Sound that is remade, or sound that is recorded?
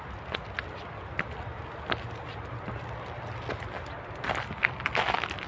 recorded